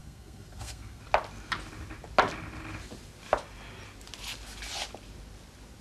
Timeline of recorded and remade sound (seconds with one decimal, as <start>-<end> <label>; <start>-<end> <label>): 0.0-1.0 remade; 1.0-5.8 recorded